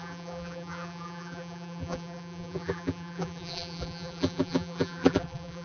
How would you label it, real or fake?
fake